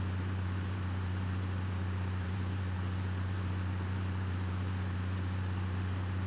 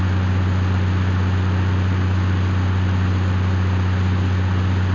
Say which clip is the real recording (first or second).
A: second